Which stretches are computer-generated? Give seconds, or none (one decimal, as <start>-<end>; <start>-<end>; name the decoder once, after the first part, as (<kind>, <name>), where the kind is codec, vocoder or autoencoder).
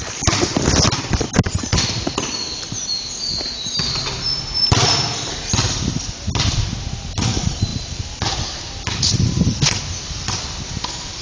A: none